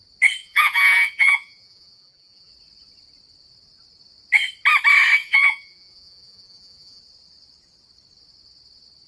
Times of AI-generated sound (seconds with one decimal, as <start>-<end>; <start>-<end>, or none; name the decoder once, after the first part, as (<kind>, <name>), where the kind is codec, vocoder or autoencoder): 0.4-2.5 (vocoder, Vocos); 5.2-7.0